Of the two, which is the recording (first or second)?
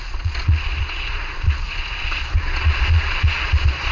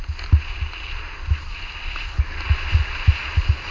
second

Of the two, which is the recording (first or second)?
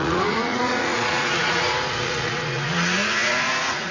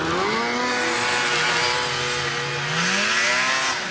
second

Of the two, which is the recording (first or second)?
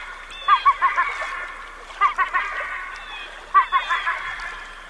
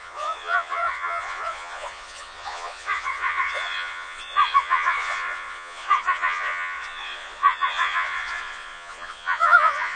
first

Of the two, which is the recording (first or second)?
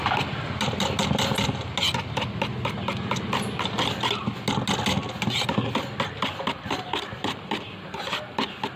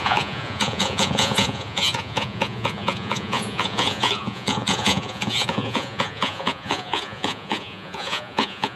first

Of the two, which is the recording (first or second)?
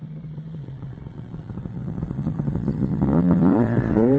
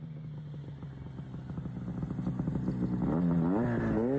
second